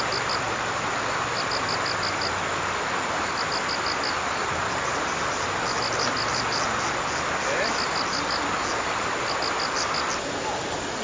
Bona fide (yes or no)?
yes